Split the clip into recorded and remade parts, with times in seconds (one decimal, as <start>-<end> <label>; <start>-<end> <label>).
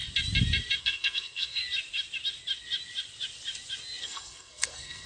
0.0-0.8 recorded; 0.8-1.6 remade; 1.6-4.0 recorded; 4.0-5.1 remade